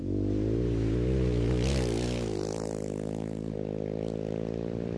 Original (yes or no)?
yes